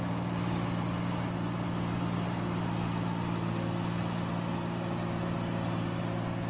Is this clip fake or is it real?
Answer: real